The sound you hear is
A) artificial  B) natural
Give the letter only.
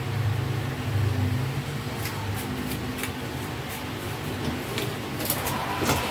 B